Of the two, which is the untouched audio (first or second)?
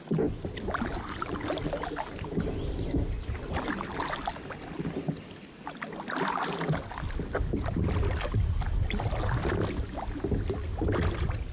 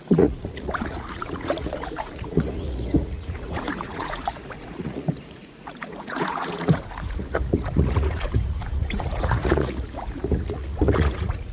first